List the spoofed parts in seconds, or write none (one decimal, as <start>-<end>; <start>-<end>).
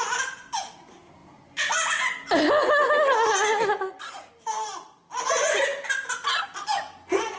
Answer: none